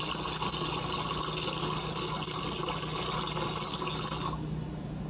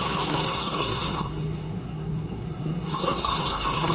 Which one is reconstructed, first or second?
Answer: second